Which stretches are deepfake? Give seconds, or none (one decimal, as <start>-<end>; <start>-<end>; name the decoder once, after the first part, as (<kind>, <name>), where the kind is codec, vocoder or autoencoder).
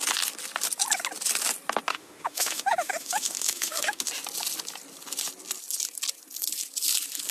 1.9-4.1 (autoencoder, DAC-VAE)